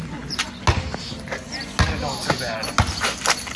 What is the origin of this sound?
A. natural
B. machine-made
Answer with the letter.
A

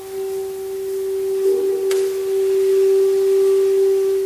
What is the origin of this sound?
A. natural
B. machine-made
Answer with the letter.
A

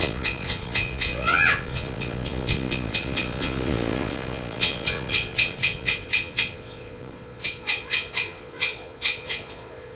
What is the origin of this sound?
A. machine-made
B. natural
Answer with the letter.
A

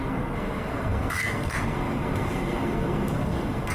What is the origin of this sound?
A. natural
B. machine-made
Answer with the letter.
B